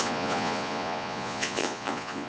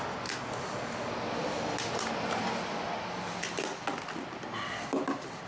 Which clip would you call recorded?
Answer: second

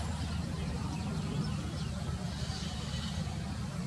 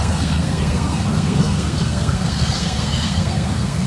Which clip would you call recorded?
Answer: first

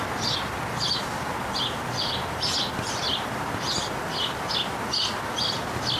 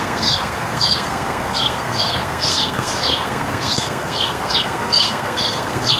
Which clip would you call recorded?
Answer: first